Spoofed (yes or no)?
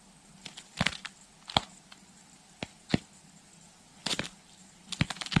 no